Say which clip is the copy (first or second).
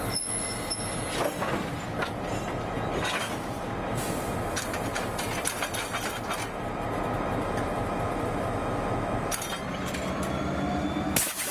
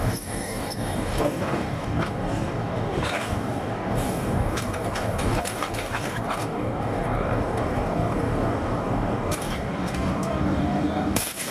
second